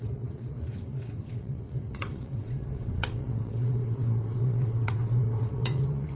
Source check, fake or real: fake